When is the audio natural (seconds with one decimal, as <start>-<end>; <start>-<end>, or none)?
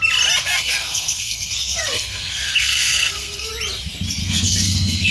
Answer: 0.0-0.4; 3.5-4.2